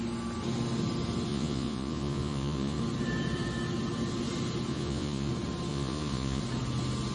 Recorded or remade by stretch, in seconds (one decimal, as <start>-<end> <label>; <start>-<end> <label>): 0.0-1.3 recorded; 1.3-2.8 remade; 2.8-4.7 recorded; 4.7-5.3 remade; 5.3-5.7 recorded; 5.7-6.4 remade; 6.4-7.1 recorded